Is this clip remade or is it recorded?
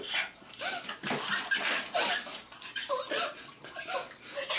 recorded